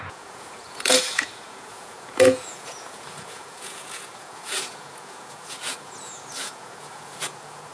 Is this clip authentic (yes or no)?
no